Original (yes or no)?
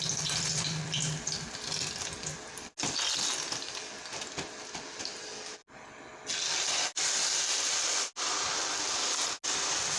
yes